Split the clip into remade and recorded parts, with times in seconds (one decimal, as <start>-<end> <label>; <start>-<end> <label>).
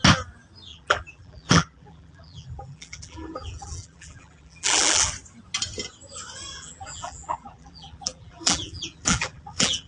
0.0-0.7 recorded; 0.7-5.1 remade; 5.1-6.5 recorded; 6.5-9.9 remade